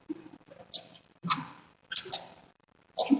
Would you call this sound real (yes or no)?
no